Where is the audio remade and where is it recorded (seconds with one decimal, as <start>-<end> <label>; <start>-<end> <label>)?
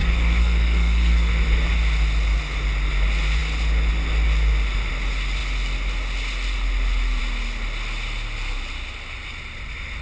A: 0.0-1.3 remade; 1.3-10.0 recorded